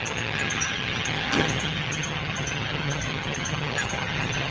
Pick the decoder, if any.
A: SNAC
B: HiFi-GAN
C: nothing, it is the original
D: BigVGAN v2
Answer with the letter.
B